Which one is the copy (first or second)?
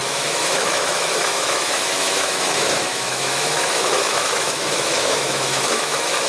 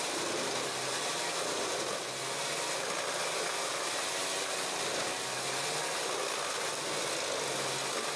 first